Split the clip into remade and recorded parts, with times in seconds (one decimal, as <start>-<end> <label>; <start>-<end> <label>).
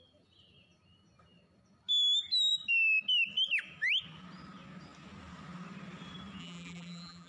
0.0-6.4 recorded; 6.4-7.3 remade